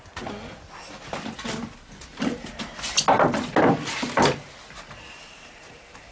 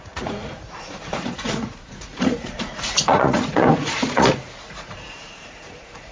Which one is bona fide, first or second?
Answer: first